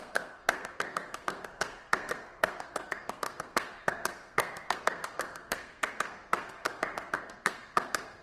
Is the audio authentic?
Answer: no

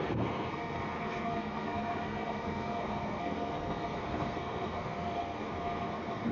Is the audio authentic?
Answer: no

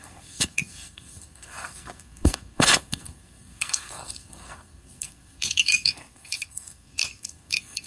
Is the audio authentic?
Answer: no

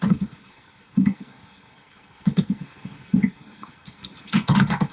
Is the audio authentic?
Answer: no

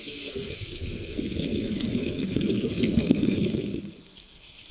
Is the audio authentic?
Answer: no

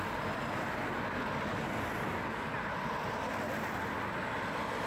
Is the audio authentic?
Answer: yes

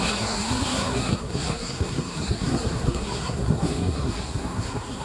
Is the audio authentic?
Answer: no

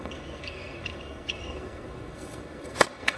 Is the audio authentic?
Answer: no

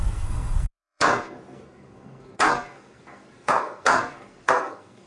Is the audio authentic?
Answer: no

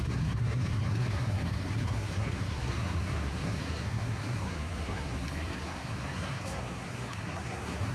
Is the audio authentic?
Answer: no